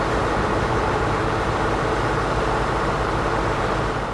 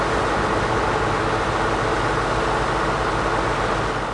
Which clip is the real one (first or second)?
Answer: second